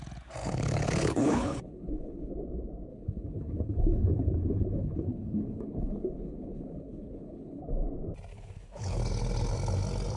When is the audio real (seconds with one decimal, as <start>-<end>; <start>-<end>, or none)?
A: 0.0-0.4; 2.3-2.9; 7.6-8.3; 9.0-10.2